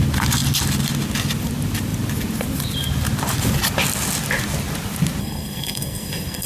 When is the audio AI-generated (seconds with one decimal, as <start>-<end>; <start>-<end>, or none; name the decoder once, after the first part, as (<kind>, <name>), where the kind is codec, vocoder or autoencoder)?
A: 5.2-6.5 (codec, SNAC)